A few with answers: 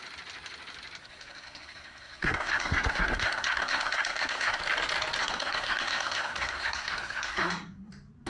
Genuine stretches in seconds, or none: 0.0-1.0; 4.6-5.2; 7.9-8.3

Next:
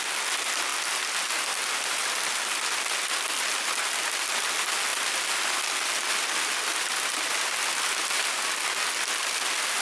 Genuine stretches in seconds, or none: 0.0-9.8

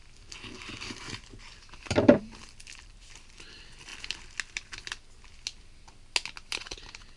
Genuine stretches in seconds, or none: 3.9-6.5

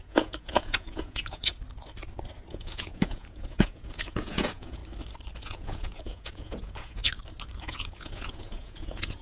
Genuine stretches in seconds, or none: 1.5-2.5; 4.8-5.4; 7.0-7.6